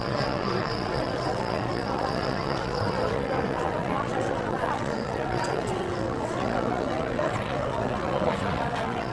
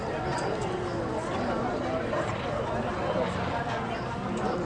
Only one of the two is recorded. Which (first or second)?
second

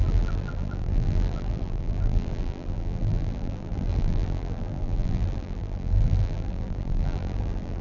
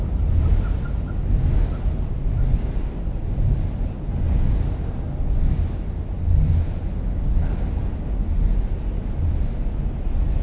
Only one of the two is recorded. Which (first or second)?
second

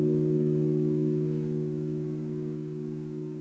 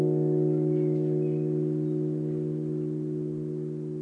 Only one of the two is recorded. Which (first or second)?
second